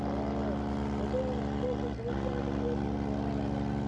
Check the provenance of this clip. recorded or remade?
recorded